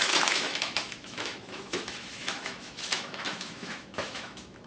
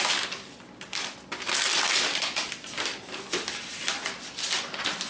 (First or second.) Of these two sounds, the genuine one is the second